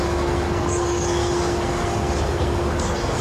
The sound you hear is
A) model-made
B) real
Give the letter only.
A